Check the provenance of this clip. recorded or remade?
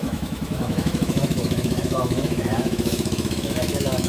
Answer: remade